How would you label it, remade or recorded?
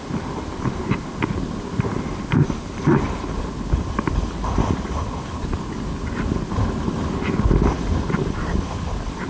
recorded